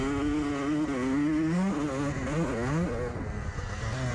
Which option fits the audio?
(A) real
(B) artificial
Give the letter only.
A